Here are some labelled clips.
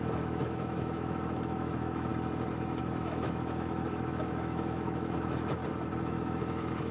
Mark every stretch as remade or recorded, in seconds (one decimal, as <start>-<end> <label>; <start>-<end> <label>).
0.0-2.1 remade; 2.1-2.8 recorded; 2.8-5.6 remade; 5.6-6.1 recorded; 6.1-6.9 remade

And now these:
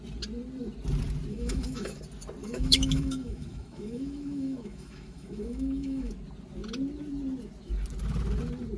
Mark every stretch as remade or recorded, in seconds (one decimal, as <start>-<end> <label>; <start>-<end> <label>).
0.0-1.3 recorded; 1.3-2.0 remade; 2.0-2.4 recorded; 2.4-6.1 remade; 6.1-8.8 recorded

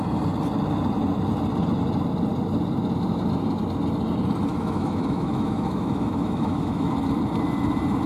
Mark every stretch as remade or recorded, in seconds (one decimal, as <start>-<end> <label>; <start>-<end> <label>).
0.0-4.5 recorded; 4.5-6.9 remade; 6.9-8.1 recorded